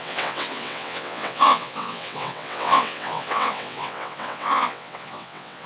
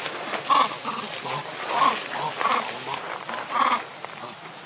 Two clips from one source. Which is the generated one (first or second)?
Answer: first